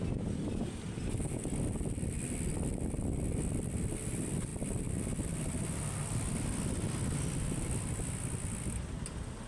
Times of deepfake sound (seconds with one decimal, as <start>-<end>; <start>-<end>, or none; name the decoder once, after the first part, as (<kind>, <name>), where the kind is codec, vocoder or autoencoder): none